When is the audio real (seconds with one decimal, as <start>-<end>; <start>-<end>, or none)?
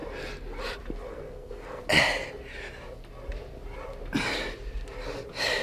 0.0-1.1; 1.8-5.6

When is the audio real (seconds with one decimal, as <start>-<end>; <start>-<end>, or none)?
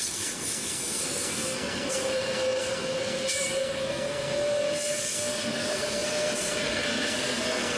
none